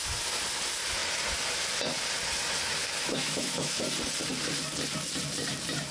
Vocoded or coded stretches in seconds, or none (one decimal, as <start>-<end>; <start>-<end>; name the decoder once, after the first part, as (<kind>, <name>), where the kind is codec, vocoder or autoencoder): 2.8-3.8 (autoencoder, DAC-VAE)